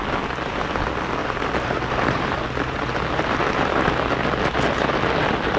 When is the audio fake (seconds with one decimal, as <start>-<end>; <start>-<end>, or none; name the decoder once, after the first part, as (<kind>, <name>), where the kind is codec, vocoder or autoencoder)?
1.2-3.9 (vocoder, BigVGAN v2)